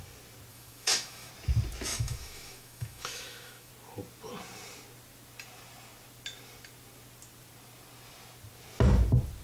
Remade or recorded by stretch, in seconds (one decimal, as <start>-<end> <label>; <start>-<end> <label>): 0.0-0.5 recorded; 0.5-1.3 remade; 1.3-1.9 recorded; 1.9-3.7 remade; 3.7-9.4 recorded